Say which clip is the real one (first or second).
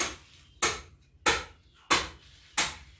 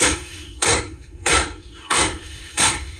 first